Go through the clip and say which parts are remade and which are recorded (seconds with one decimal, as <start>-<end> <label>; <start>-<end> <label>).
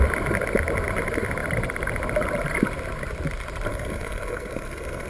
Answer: 0.0-3.7 recorded; 3.7-5.1 remade